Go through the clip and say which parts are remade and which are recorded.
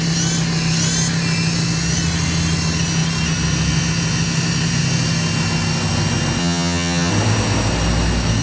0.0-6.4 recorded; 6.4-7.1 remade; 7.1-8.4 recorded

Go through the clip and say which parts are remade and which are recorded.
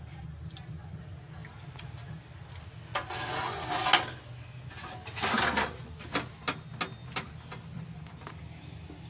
0.0-9.1 recorded